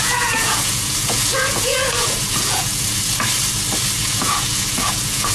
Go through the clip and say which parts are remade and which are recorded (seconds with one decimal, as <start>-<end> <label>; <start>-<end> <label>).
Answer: 0.0-3.2 remade; 3.2-4.0 recorded; 4.0-5.3 remade